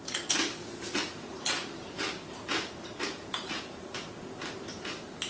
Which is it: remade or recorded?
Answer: recorded